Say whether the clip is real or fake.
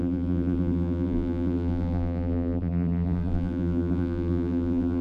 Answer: fake